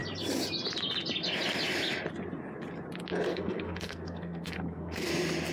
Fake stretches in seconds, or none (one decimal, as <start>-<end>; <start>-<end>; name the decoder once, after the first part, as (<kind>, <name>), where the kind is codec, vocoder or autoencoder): 3.3-5.1 (codec, SNAC)